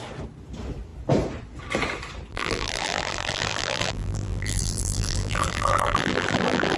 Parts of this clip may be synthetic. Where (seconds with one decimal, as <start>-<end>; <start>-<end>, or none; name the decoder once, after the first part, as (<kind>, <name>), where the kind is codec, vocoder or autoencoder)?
2.3-6.8 (vocoder, BigVGAN v2)